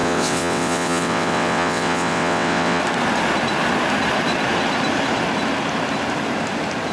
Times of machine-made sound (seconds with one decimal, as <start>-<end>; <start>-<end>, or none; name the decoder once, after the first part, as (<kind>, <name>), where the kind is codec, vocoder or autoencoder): 0.0-2.8 (vocoder, WaveNeXt)